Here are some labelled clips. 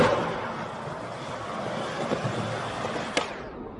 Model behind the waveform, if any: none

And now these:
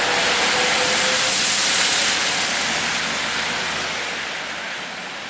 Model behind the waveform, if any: none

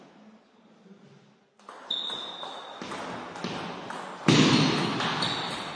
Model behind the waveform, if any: none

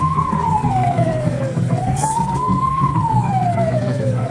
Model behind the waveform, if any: codec, SNAC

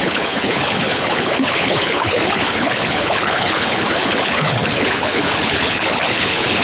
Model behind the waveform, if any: codec, HILCodec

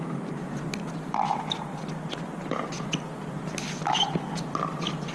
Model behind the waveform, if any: none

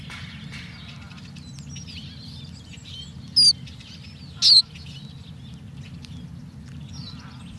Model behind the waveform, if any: none